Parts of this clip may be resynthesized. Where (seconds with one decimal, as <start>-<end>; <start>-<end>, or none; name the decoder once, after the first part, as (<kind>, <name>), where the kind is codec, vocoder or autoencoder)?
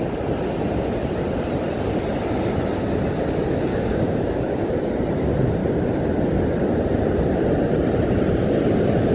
3.7-4.7 (codec, DAC)